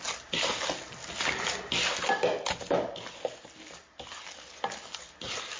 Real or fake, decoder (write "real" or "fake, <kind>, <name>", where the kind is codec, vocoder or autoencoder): real